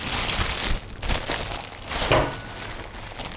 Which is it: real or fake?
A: real